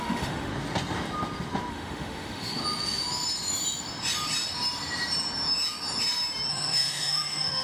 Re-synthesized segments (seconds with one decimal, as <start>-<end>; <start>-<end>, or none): 0.0-0.5; 1.7-2.6; 6.5-7.6